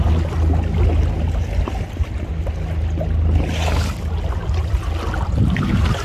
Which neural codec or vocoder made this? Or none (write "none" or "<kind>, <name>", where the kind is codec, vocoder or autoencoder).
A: none